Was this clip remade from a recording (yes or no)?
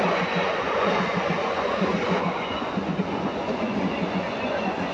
yes